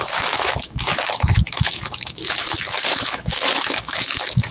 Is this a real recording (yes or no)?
no